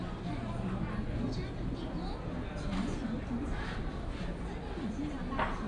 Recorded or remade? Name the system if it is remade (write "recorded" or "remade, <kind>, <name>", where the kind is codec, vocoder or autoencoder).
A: recorded